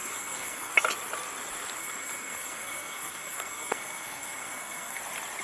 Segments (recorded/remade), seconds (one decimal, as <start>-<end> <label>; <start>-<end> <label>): 0.0-0.7 remade; 0.7-1.8 recorded; 1.8-5.0 remade; 5.0-5.4 recorded